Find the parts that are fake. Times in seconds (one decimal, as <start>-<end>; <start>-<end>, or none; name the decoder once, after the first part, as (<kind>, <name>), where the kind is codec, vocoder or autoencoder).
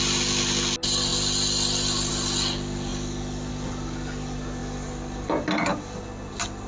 none